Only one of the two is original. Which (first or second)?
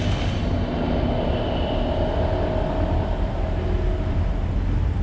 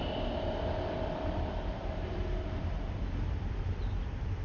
first